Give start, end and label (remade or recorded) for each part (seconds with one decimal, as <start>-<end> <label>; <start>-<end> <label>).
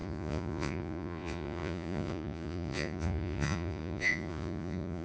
0.0-5.0 remade